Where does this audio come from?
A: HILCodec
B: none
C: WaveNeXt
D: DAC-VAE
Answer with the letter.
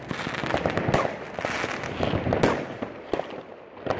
B